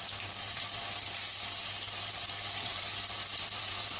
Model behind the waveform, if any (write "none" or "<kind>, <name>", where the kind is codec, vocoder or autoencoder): vocoder, BigVGAN v2